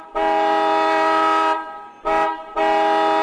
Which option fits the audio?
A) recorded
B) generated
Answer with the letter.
A